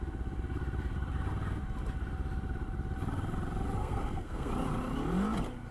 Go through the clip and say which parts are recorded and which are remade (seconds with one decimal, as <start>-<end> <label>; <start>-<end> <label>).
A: 0.0-3.8 recorded; 3.8-4.5 remade; 4.5-5.7 recorded